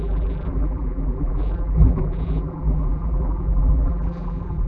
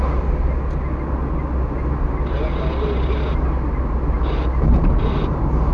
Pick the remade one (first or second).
first